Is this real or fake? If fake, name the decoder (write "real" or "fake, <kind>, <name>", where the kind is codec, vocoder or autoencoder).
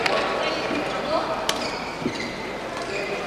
real